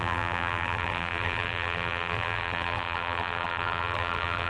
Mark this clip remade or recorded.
remade